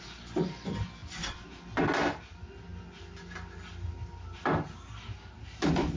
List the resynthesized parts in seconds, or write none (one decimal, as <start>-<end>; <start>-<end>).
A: none